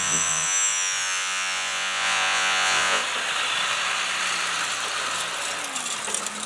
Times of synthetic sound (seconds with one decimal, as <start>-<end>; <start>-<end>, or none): 0.0-3.0